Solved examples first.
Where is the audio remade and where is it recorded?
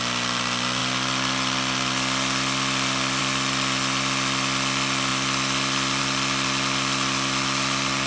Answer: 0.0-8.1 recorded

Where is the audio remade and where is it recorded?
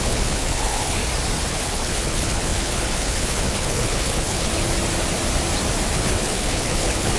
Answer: 0.0-1.0 remade; 1.0-1.5 recorded; 1.5-4.5 remade; 4.5-5.9 recorded; 5.9-7.2 remade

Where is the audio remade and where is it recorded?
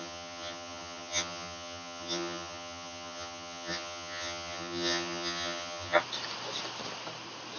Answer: 0.0-6.0 remade; 6.0-7.6 recorded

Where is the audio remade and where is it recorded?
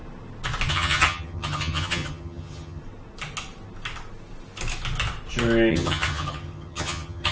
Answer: 0.0-0.7 recorded; 0.7-2.8 remade; 2.8-5.7 recorded; 5.7-7.3 remade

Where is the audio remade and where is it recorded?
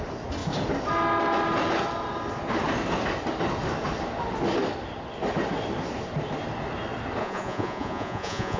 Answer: 0.0-7.2 recorded; 7.2-8.6 remade